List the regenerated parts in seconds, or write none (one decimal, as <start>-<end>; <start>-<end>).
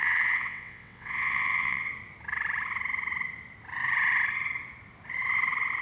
0.0-1.9